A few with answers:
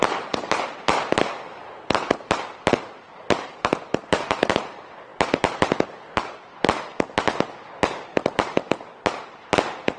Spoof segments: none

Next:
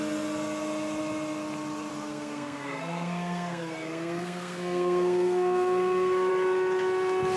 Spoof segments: 1.9-6.3 (codec, SNAC)